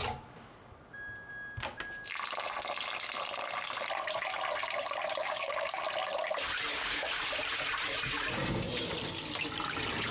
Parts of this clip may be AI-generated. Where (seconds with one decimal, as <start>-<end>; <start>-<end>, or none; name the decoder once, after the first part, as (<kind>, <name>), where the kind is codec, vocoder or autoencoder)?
5.2-5.8 (codec, DAC); 6.7-7.2